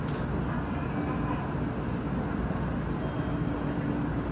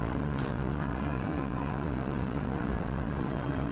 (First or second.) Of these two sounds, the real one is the first